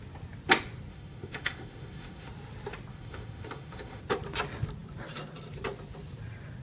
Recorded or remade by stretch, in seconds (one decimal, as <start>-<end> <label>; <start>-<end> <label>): 0.0-0.9 recorded; 0.9-2.3 remade; 2.3-2.9 recorded; 2.9-4.0 remade; 4.0-6.6 recorded

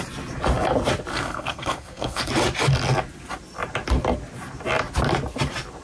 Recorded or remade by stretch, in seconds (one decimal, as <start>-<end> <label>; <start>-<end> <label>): 0.0-1.1 recorded; 1.1-2.3 remade; 2.3-5.8 recorded